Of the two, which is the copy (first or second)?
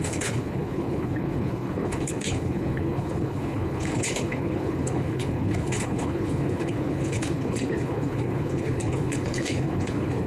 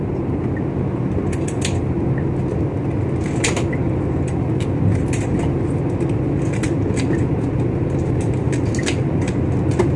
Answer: first